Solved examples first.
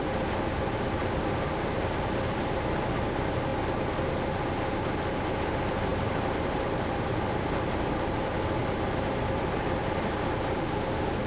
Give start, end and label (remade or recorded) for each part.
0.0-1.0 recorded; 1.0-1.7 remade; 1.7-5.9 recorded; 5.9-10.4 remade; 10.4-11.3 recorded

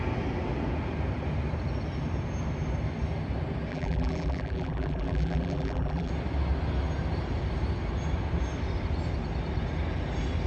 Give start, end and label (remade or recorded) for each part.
0.0-3.7 recorded; 3.7-6.1 remade; 6.1-10.5 recorded